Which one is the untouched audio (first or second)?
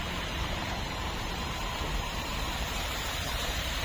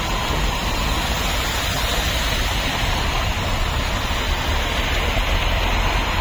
second